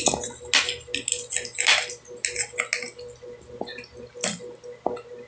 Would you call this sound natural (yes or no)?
yes